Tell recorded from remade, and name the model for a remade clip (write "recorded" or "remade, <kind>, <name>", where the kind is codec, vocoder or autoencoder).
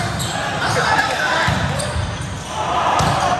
recorded